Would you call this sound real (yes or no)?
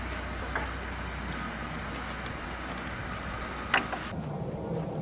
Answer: yes